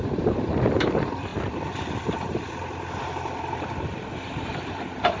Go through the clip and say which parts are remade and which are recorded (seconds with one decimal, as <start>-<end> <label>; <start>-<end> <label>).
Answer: 0.0-1.3 remade; 1.3-4.4 recorded; 4.4-5.2 remade